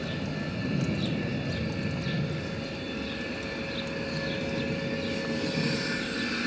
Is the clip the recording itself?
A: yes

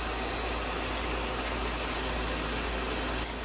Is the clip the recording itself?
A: yes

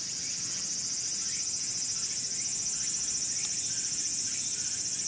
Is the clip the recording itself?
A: yes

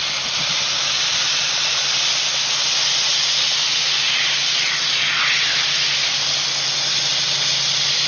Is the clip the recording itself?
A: yes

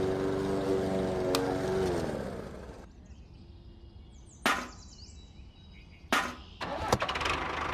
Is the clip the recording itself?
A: yes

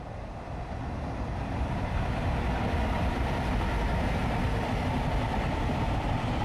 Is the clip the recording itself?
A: no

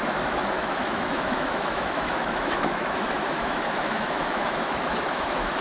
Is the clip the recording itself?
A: no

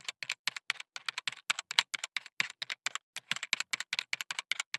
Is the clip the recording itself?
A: yes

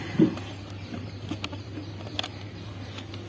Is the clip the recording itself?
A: yes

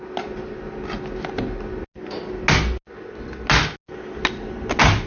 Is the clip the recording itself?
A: yes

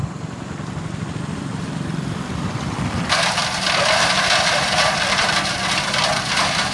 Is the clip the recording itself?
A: no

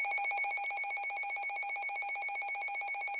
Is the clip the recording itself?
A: yes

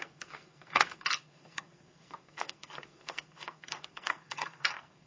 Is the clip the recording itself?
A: no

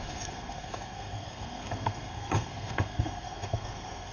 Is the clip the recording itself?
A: no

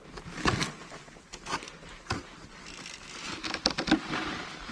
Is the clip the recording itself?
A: yes